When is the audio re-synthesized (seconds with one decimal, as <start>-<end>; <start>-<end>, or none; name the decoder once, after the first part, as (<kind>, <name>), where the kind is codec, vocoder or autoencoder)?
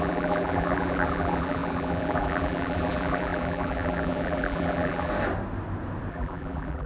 0.0-5.1 (vocoder, BigVGAN v2); 6.1-6.9